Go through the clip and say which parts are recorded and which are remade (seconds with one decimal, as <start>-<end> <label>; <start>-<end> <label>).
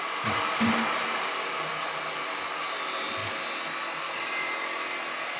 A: 0.0-5.4 recorded